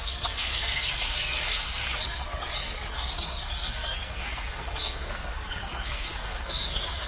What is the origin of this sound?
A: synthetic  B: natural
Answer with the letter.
A